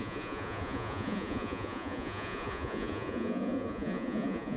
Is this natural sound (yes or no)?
no